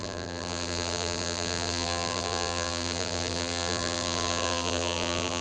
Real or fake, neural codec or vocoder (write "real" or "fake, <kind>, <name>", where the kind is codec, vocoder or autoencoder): fake, vocoder, BigVGAN v2